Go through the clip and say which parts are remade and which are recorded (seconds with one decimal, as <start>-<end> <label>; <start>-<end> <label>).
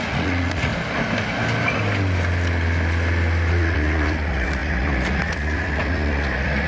0.0-0.7 remade; 0.7-3.5 recorded; 3.5-6.7 remade